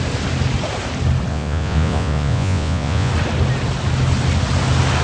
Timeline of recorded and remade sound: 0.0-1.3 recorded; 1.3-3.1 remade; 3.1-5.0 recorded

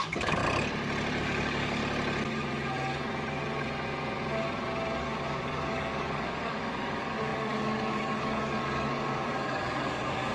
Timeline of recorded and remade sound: 0.0-0.4 remade; 0.4-1.2 recorded; 1.2-1.8 remade; 1.8-5.0 recorded; 5.0-10.3 remade

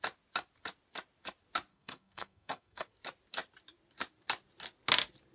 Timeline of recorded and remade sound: 0.0-1.7 recorded; 1.7-2.9 remade; 2.9-5.3 recorded